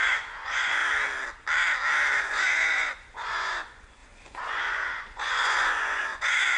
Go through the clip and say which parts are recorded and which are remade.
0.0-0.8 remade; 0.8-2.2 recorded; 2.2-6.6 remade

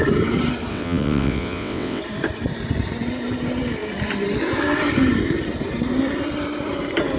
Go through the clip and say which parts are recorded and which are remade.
0.0-0.7 recorded; 0.7-2.0 remade; 2.0-7.2 recorded

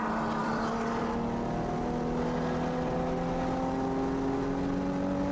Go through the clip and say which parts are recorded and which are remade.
0.0-0.4 recorded; 0.4-1.0 remade; 1.0-5.3 recorded

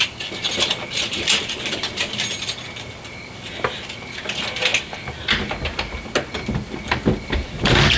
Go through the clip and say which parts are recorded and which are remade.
0.0-8.0 recorded

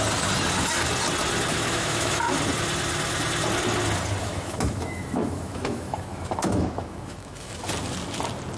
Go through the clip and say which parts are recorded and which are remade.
0.0-1.5 recorded; 1.5-2.4 remade; 2.4-4.2 recorded; 4.2-7.6 remade; 7.6-8.6 recorded

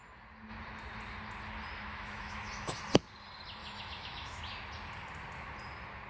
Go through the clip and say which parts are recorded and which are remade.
0.0-1.9 recorded; 1.9-2.8 remade; 2.8-3.6 recorded; 3.6-4.4 remade; 4.4-6.1 recorded

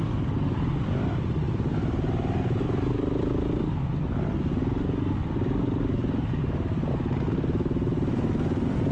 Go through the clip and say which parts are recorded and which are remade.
0.0-8.9 recorded